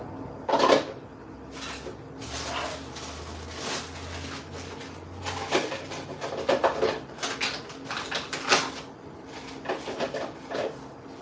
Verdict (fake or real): real